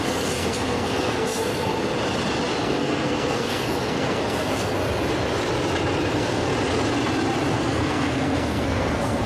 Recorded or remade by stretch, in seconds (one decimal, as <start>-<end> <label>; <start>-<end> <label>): 0.0-1.7 remade; 1.7-2.6 recorded; 2.6-4.8 remade; 4.8-6.1 recorded; 6.1-6.5 remade; 6.5-7.5 recorded; 7.5-9.3 remade